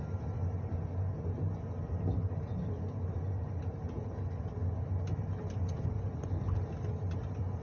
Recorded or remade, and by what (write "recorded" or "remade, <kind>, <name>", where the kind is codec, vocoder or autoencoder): recorded